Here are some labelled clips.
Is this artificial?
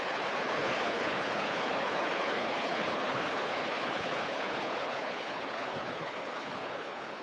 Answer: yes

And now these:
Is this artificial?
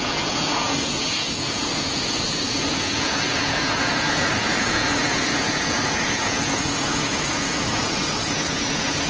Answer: yes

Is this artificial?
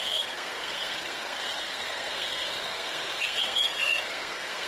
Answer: yes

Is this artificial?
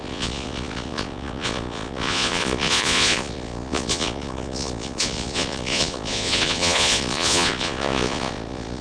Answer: yes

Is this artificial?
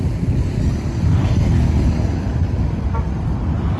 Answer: no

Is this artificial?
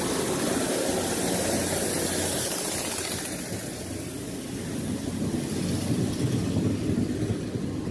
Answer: no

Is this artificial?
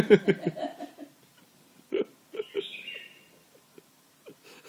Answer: no